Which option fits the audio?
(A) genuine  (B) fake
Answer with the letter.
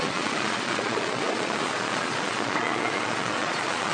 B